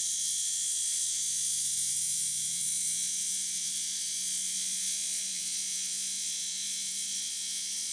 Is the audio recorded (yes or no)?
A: no